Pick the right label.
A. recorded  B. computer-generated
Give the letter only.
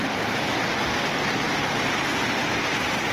A